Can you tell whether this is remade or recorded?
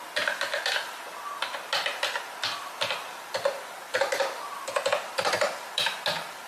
recorded